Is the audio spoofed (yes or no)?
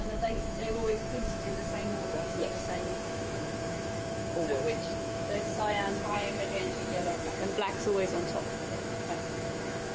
yes